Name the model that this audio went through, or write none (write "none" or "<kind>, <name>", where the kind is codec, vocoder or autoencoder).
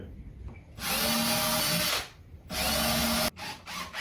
none